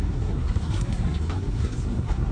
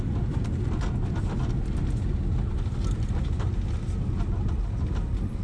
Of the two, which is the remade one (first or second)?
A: first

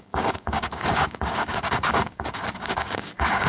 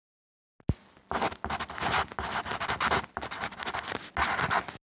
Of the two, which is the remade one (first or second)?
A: first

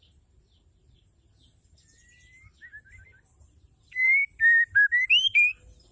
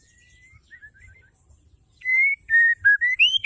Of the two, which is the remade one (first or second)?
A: second